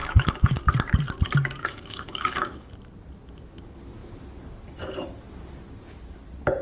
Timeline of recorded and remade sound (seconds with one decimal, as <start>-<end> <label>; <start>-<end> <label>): 0.0-0.6 remade; 0.6-1.6 recorded; 1.6-2.7 remade; 2.7-6.6 recorded